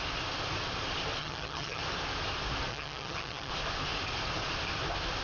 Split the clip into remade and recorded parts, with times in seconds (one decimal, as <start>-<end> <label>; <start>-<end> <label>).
0.0-1.2 recorded; 1.2-1.8 remade; 1.8-2.7 recorded; 2.7-3.5 remade; 3.5-5.2 recorded